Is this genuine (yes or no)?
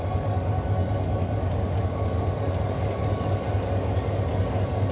no